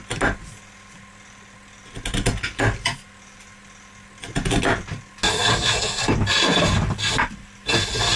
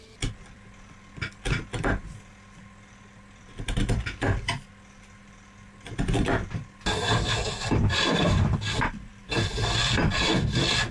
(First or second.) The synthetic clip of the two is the second